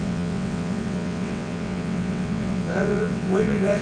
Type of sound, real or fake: fake